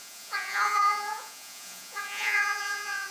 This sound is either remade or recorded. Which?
remade